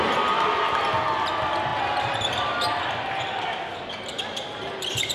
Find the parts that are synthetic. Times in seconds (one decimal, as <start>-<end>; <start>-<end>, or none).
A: none